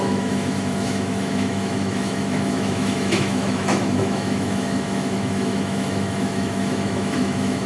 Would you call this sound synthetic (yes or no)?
yes